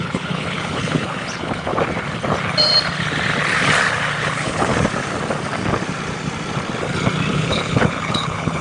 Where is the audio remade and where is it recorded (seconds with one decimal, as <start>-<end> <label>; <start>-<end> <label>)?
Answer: 0.0-1.7 remade; 1.7-4.2 recorded; 4.2-4.7 remade; 4.7-7.3 recorded; 7.3-8.6 remade